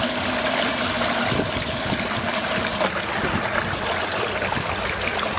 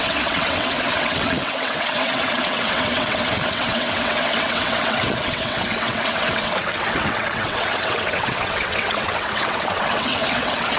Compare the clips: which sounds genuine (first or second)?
first